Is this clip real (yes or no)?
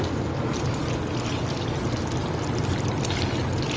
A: yes